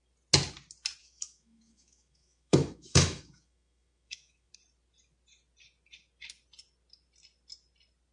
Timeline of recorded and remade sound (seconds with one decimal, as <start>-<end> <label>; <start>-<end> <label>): 0.0-1.0 recorded; 1.0-4.5 remade; 4.5-8.1 recorded

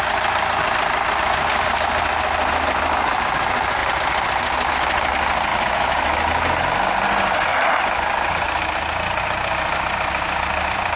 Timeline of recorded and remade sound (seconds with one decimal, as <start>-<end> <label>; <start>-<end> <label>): 0.0-5.5 recorded; 5.5-6.3 remade; 6.3-11.0 recorded

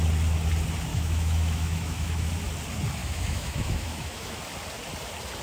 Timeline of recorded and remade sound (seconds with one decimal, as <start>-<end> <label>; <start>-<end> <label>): 0.0-0.9 recorded; 0.9-2.3 remade; 2.3-3.0 recorded; 3.0-4.4 remade; 4.4-5.4 recorded

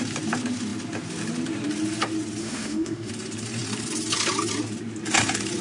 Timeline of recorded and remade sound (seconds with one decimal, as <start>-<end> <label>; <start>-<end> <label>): 0.0-2.4 recorded; 2.4-3.1 remade; 3.1-5.6 recorded

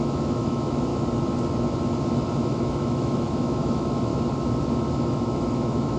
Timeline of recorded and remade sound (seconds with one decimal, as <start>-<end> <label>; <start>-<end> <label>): 0.0-0.9 remade; 0.9-2.4 recorded; 2.4-4.1 remade; 4.1-4.9 recorded; 4.9-6.0 remade

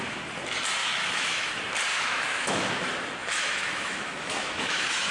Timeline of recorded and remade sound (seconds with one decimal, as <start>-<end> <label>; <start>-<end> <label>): 0.0-0.8 recorded; 0.8-1.5 remade; 1.5-1.9 recorded; 1.9-2.8 remade; 2.8-3.2 recorded; 3.2-5.1 remade

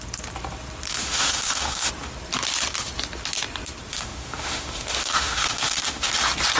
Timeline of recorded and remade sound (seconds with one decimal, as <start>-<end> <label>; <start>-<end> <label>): 0.0-0.9 recorded; 0.9-1.9 remade; 1.9-3.9 recorded; 3.9-6.1 remade; 6.1-6.6 recorded

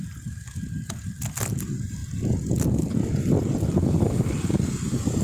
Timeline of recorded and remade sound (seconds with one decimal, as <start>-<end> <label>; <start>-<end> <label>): 0.0-5.2 recorded